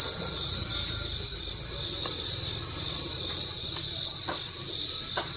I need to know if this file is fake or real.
real